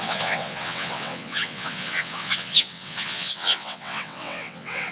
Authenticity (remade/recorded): remade